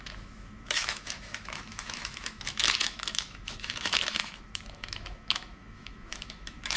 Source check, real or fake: fake